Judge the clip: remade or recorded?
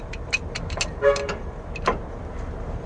recorded